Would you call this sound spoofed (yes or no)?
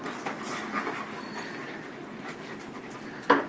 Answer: no